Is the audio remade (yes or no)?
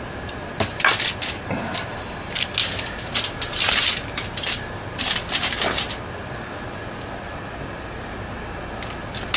no